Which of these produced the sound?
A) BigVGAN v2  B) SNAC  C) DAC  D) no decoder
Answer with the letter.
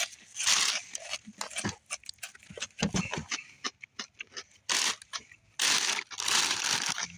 D